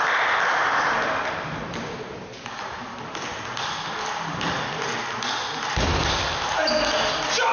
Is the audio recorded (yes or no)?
yes